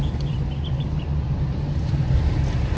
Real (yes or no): yes